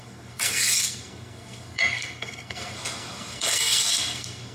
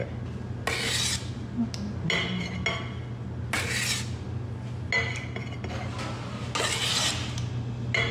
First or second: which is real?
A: second